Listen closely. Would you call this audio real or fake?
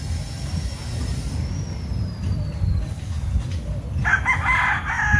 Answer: real